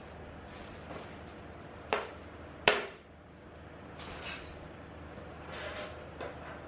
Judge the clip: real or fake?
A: real